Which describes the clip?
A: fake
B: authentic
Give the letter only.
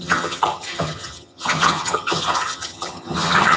A